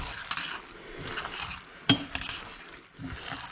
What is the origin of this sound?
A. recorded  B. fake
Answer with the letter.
A